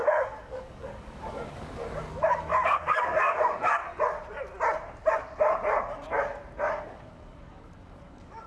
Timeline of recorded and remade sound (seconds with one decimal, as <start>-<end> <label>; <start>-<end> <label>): 0.0-3.8 remade; 3.8-6.8 recorded; 6.8-8.5 remade